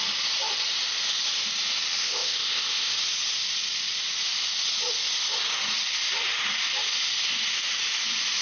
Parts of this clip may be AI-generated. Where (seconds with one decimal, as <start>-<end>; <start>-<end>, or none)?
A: 2.0-2.9